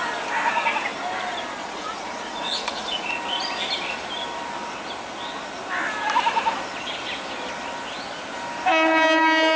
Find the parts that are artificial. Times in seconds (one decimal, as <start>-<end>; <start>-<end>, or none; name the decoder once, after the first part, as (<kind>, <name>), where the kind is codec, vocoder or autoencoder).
1.6-3.1 (vocoder, Vocos)